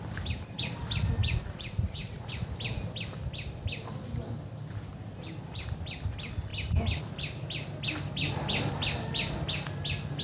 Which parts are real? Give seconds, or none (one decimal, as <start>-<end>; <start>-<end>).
0.0-1.2; 2.3-10.2